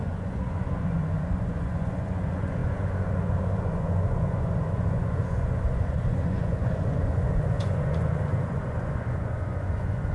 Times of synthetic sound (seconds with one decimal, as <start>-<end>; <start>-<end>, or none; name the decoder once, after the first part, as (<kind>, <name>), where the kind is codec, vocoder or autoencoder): 0.0-10.1 (vocoder, Vocos)